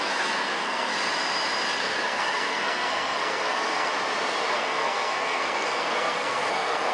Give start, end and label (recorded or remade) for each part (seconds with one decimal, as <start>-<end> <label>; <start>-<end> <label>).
0.0-0.9 remade; 0.9-1.8 recorded; 1.8-3.9 remade; 3.9-4.5 recorded; 4.5-6.9 remade